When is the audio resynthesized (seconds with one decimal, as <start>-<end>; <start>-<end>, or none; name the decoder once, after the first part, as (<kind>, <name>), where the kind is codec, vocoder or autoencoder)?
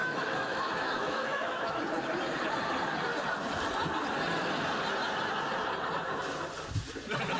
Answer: 0.0-1.8 (autoencoder, DAC-VAE)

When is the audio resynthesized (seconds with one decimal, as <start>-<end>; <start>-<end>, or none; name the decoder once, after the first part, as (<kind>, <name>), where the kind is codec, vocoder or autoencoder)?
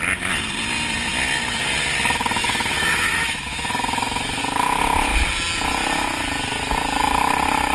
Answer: 2.4-4.4 (autoencoder, DAC-VAE)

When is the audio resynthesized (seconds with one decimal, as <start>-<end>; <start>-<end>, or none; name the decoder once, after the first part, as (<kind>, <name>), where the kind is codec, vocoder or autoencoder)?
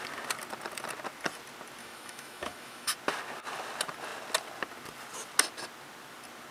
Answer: 1.8-2.9 (autoencoder, DAC-VAE)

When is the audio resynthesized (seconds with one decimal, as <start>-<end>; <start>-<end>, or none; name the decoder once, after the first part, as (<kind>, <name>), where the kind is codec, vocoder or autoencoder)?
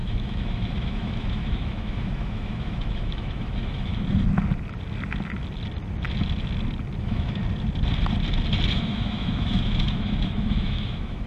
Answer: 0.0-3.9 (autoencoder, DAC-VAE); 7.0-7.4; 8.8-11.3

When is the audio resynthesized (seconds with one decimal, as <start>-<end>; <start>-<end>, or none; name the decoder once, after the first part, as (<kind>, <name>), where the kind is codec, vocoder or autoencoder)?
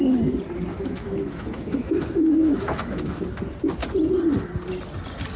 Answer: 0.7-3.2 (autoencoder, DAC-VAE)